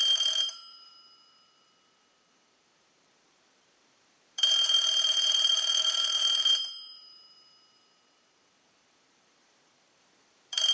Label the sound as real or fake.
fake